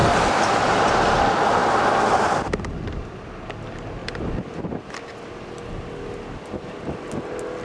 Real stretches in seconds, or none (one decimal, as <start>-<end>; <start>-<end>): 0.0-7.6

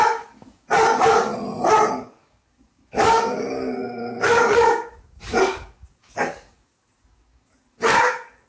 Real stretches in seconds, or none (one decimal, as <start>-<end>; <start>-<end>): 1.3-1.9

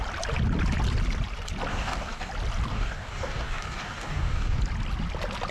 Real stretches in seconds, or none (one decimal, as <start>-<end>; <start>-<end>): 0.0-1.7; 2.3-2.7; 4.6-5.5